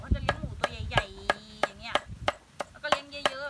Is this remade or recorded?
recorded